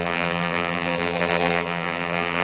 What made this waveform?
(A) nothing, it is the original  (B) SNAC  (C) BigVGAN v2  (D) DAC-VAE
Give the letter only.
C